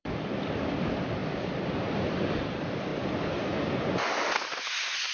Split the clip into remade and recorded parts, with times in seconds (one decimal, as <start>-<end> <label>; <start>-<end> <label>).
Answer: 0.0-2.9 remade; 2.9-4.4 recorded; 4.4-5.1 remade